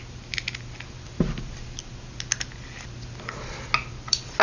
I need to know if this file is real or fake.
real